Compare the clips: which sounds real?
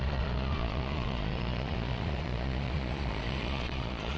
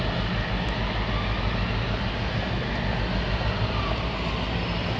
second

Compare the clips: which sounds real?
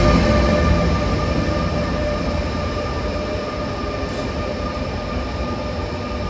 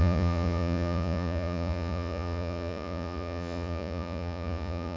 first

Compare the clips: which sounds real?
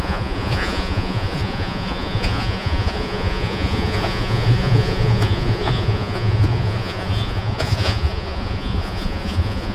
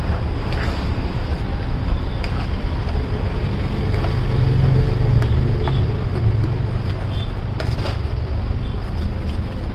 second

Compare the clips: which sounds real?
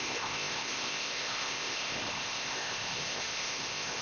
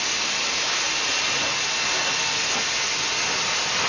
second